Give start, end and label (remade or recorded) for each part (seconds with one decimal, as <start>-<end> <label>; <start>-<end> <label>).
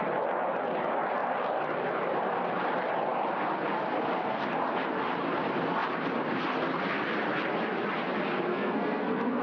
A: 0.0-8.5 recorded; 8.5-9.4 remade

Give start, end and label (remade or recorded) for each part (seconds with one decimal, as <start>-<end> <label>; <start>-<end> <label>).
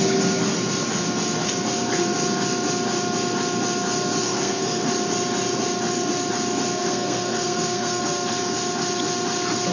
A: 0.0-4.2 recorded; 4.2-4.9 remade; 4.9-6.8 recorded; 6.8-8.0 remade; 8.0-9.7 recorded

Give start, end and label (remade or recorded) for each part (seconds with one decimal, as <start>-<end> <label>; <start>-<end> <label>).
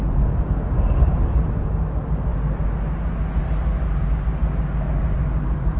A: 0.0-5.8 recorded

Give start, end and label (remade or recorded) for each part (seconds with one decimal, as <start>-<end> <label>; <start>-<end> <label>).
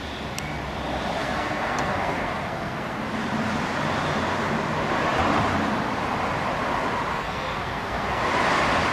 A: 0.0-1.2 recorded; 1.2-3.0 remade; 3.0-7.1 recorded; 7.1-8.2 remade; 8.2-8.9 recorded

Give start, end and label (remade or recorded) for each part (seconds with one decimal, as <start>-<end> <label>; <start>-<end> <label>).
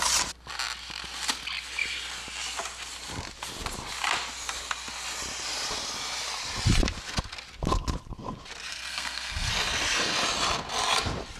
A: 0.0-8.7 recorded; 8.7-9.5 remade; 9.5-11.4 recorded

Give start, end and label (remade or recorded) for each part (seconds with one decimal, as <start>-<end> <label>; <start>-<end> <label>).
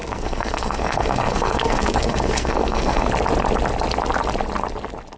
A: 0.0-3.1 remade; 3.1-5.2 recorded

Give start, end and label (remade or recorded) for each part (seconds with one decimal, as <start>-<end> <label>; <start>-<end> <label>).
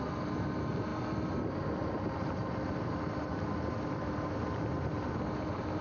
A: 0.0-5.8 recorded